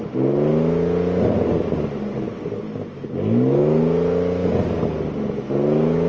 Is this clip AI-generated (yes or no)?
no